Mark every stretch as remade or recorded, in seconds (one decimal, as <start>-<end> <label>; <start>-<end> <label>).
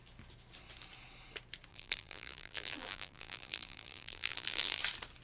0.0-1.7 recorded; 1.7-4.8 remade; 4.8-5.2 recorded